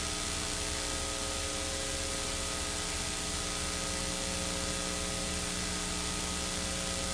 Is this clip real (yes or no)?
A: yes